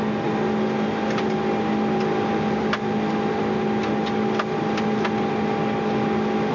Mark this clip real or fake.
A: real